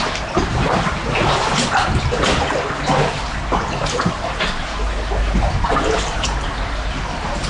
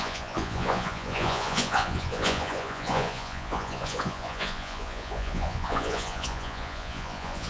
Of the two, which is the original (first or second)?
first